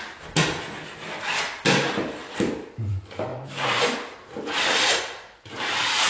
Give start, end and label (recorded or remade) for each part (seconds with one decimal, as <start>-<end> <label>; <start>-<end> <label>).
0.0-2.2 recorded; 2.2-2.9 remade; 2.9-6.1 recorded